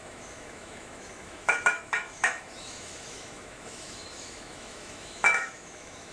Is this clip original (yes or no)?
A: no